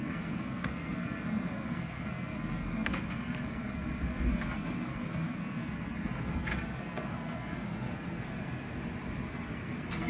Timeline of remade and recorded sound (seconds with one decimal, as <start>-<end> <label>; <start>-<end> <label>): 0.0-8.8 remade; 8.8-9.3 recorded; 9.3-10.1 remade